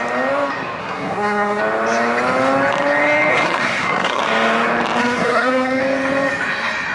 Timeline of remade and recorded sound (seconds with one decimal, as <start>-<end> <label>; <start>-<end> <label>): 0.0-0.8 recorded; 0.8-1.6 remade; 1.6-3.3 recorded; 3.3-4.2 remade; 4.2-5.0 recorded; 5.0-5.8 remade; 5.8-6.9 recorded